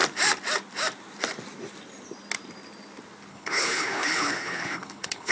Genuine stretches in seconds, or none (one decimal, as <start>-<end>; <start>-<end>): 0.0-3.3